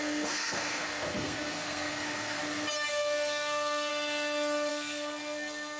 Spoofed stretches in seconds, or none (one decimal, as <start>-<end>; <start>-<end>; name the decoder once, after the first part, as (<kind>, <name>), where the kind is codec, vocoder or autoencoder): 0.0-2.4 (codec, SNAC); 2.9-3.9; 4.7-5.8